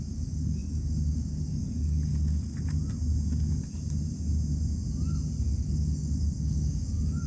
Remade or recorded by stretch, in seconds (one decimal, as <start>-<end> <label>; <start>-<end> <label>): 0.0-2.1 remade; 2.1-5.5 recorded; 5.5-7.3 remade